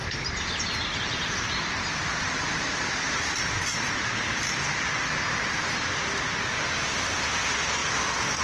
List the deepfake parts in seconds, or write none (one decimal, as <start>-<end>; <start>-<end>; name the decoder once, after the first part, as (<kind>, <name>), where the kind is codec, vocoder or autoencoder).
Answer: 0.0-3.5 (vocoder, BigVGAN v2)